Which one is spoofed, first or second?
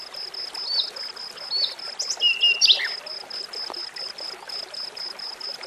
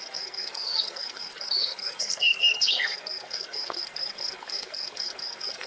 second